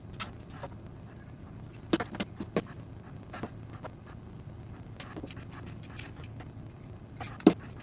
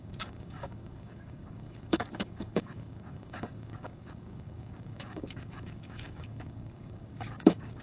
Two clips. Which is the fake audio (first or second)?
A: second